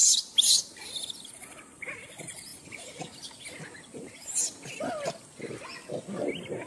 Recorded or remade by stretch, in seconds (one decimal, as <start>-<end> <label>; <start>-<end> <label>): 0.0-6.7 recorded